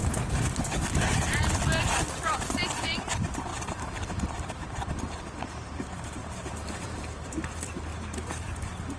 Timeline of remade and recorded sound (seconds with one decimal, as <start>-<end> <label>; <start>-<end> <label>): 0.0-1.9 recorded; 1.9-9.0 remade

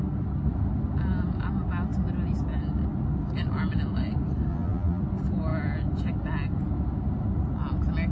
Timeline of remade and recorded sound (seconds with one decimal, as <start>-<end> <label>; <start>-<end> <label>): 0.0-4.5 recorded; 4.5-5.0 remade; 5.0-8.1 recorded

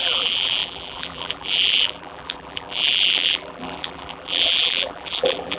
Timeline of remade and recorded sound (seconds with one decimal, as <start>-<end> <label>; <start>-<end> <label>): 0.0-5.6 remade

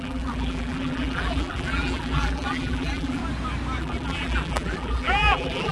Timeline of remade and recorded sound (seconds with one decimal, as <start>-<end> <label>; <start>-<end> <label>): 0.0-3.2 remade; 3.2-3.8 recorded; 3.8-5.7 remade

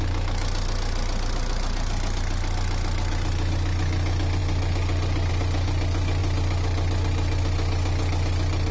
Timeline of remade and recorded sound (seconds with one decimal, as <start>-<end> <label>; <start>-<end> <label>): 0.0-8.7 recorded

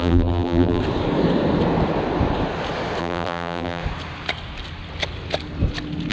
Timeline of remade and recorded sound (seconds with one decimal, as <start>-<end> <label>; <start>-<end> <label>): 0.0-0.8 remade; 0.8-3.0 recorded; 3.0-3.8 remade; 3.8-6.1 recorded